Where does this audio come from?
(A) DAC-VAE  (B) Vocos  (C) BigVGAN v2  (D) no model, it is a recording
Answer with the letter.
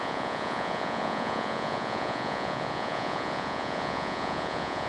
B